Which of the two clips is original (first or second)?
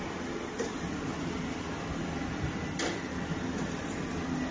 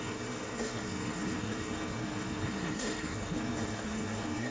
first